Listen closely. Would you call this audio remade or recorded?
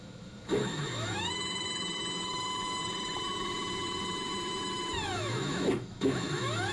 remade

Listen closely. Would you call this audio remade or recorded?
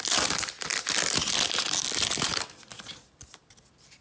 recorded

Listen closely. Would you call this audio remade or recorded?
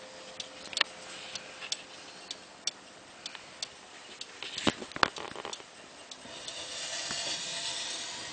recorded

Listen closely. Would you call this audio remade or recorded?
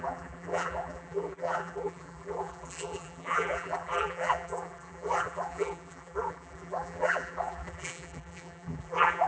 remade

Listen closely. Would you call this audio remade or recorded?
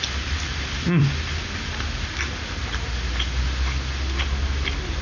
recorded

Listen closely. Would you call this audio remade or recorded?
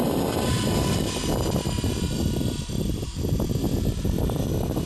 recorded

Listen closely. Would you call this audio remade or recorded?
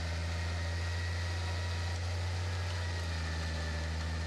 recorded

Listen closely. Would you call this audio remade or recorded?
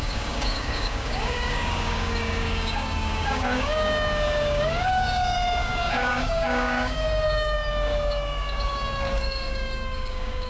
remade